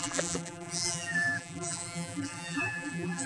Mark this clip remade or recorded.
remade